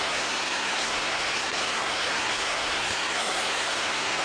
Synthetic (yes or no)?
yes